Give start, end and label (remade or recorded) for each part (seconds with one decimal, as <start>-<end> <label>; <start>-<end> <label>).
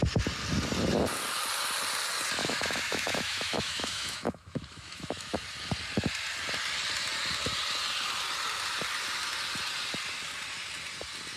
0.0-2.4 recorded; 2.4-5.4 remade; 5.4-11.4 recorded